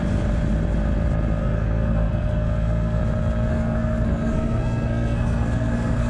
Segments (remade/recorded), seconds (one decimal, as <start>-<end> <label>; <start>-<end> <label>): 0.0-1.4 recorded; 1.4-3.0 remade; 3.0-3.5 recorded; 3.5-6.1 remade